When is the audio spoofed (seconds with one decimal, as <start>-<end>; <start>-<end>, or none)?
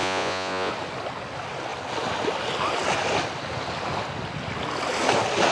0.0-0.7